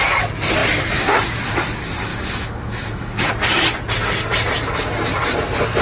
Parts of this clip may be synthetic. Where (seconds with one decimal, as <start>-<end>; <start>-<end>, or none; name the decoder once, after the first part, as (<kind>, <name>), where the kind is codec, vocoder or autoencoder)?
2.1-3.3 (autoencoder, DAC-VAE)